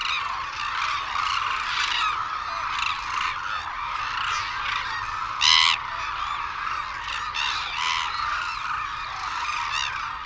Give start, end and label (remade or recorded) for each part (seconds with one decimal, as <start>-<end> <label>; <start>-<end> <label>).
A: 0.0-10.3 recorded

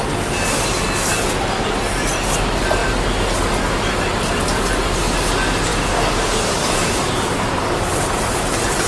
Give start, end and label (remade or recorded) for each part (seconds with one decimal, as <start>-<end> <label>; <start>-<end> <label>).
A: 0.0-8.9 recorded

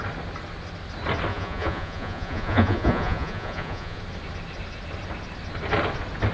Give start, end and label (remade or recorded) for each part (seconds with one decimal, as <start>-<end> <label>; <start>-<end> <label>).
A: 0.0-1.3 recorded; 1.3-4.0 remade; 4.0-6.3 recorded